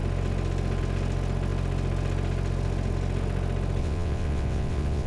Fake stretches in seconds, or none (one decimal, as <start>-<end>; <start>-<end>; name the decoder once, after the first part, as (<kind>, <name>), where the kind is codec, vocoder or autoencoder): 3.8-5.1 (vocoder, WaveNeXt)